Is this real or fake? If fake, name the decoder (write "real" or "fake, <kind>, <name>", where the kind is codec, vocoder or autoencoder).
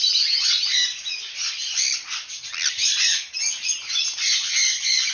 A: real